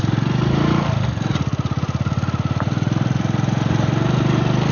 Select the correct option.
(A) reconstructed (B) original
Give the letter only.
B